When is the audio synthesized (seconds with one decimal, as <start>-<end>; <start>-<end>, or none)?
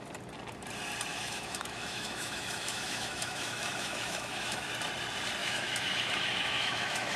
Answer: 1.1-4.7; 5.4-7.2